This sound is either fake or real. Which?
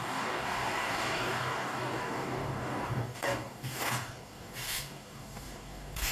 fake